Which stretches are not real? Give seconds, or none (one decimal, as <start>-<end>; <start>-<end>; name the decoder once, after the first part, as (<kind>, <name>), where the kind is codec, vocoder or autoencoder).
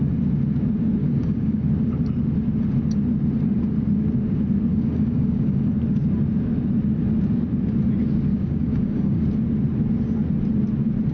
1.0-1.6 (codec, DAC); 4.7-5.7; 8.3-9.2